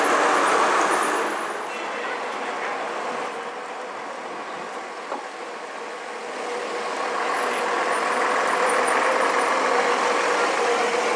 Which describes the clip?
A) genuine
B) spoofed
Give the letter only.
A